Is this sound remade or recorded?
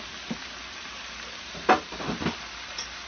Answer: recorded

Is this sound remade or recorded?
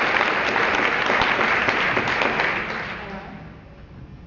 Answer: recorded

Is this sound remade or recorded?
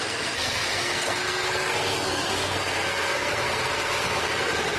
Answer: remade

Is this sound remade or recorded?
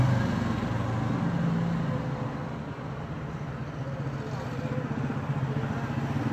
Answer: recorded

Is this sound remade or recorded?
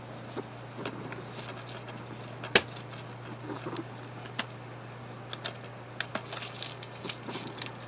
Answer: recorded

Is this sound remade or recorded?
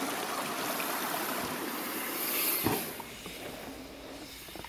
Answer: recorded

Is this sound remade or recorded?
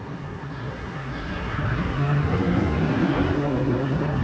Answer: remade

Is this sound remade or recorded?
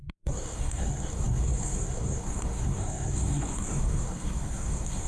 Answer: remade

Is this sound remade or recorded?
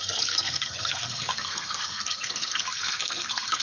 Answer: remade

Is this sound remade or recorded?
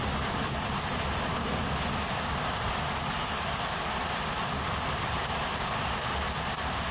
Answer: recorded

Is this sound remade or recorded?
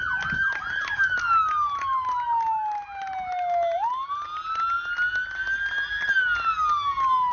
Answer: recorded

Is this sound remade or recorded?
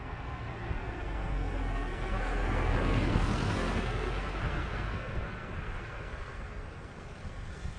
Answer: remade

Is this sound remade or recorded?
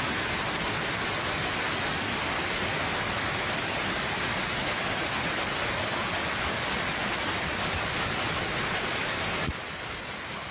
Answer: recorded